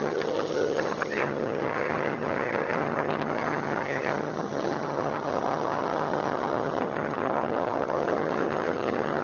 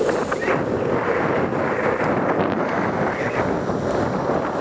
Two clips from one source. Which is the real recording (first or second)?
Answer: second